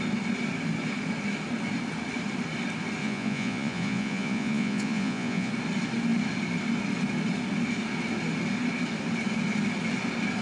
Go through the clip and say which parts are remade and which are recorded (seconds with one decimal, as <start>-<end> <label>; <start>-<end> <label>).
0.0-3.0 recorded; 3.0-5.5 remade; 5.5-10.4 recorded